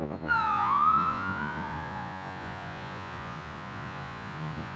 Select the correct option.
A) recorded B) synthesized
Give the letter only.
B